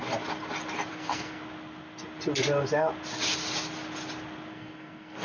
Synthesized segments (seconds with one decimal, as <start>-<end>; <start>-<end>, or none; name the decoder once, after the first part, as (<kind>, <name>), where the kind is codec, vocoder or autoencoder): 0.9-1.4 (codec, SNAC); 4.5-5.2